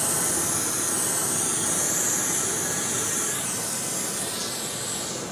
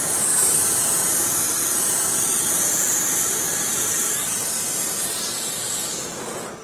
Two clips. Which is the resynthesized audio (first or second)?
second